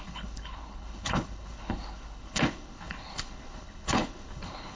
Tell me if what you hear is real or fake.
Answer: fake